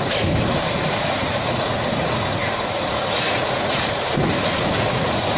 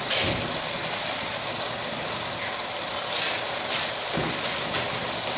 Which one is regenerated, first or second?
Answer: first